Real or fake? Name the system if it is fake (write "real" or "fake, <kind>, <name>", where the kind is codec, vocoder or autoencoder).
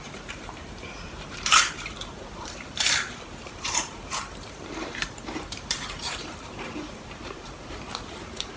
fake, vocoder, BigVGAN v2